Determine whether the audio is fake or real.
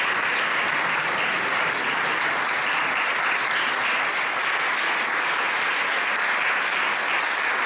real